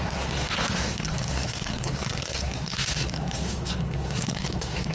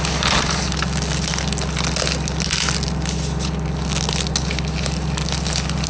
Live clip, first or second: second